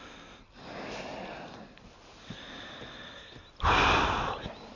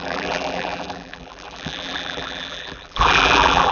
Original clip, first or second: first